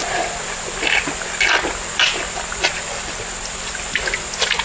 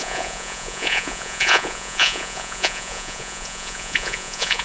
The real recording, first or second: first